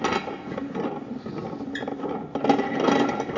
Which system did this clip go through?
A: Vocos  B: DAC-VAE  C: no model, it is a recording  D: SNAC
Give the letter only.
C